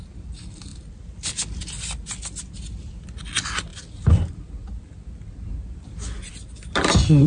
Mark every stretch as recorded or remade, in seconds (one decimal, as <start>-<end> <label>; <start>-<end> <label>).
0.0-7.3 recorded